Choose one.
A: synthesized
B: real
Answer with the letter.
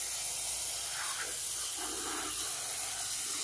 B